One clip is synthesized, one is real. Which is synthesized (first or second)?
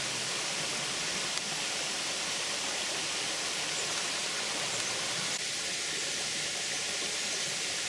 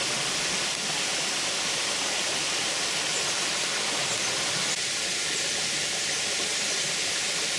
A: first